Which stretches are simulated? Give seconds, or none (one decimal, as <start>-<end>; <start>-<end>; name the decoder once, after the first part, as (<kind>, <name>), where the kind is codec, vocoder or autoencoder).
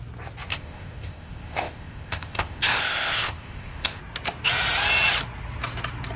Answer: 0.5-4.0 (codec, ZipCodec)